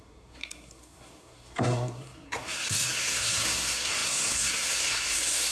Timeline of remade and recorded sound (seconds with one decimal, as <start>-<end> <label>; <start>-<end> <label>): 0.0-5.5 remade